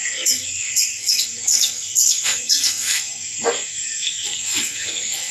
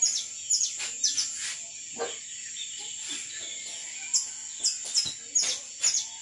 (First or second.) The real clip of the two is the second